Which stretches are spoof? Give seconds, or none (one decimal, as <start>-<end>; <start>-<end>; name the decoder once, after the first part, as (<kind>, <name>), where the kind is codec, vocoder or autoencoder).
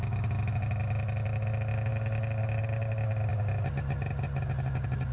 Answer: none